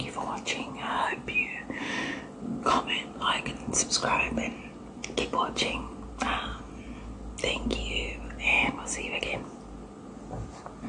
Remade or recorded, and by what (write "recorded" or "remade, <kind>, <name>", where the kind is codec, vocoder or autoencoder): recorded